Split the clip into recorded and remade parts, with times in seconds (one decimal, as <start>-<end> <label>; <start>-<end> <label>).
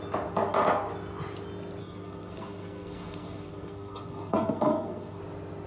0.0-1.8 recorded; 1.8-5.2 remade; 5.2-5.7 recorded